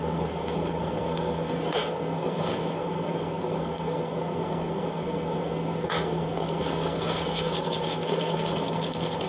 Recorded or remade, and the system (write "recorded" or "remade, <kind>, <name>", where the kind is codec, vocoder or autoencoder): remade, codec, SNAC